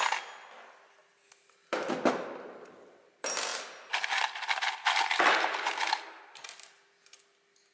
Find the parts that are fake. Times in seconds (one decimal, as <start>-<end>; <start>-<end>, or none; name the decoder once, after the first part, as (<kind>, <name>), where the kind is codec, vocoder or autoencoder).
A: none